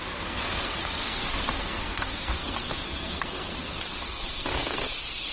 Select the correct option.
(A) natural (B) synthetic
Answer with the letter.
B